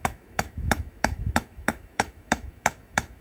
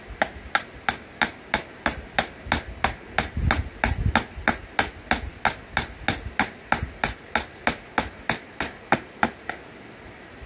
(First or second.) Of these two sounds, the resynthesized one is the first